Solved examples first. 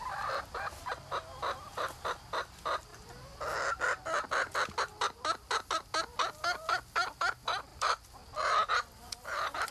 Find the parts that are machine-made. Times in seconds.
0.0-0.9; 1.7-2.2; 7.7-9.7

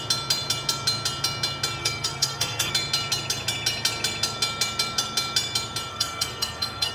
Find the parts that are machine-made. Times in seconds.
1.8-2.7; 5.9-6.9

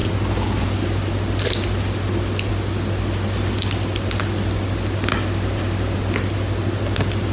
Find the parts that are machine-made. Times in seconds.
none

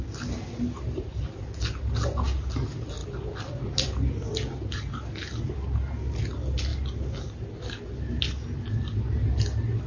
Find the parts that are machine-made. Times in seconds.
none

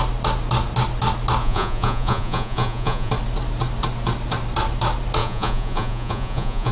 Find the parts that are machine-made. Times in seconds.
1.4-3.1; 5.2-6.7